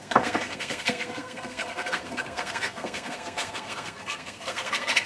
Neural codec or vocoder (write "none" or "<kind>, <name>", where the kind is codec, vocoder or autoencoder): codec, SNAC